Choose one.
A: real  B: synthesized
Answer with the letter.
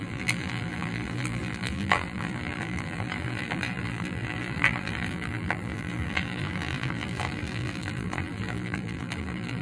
B